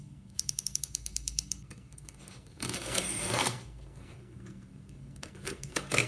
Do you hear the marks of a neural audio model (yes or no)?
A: yes